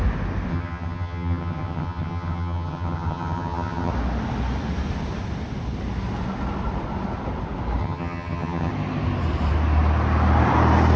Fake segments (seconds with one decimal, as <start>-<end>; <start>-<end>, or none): 0.5-3.9; 7.8-8.7

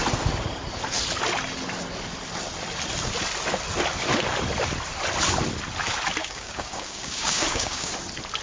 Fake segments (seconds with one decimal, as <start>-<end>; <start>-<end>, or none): 6.2-7.9